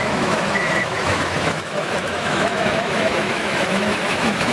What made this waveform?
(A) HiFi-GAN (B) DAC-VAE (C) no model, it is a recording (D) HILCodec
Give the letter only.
B